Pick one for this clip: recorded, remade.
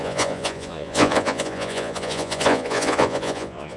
remade